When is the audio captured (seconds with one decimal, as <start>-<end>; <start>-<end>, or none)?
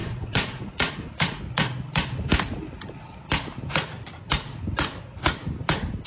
1.4-6.1